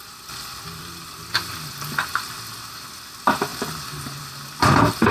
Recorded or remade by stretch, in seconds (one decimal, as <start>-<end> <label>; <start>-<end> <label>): 0.0-5.1 recorded